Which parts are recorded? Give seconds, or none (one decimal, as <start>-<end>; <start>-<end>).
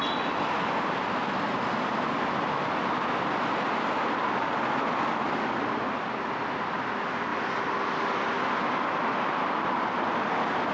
0.0-10.7